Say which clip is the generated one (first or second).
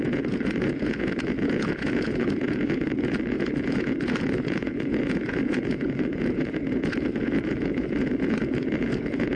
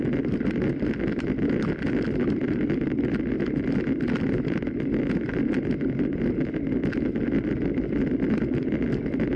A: first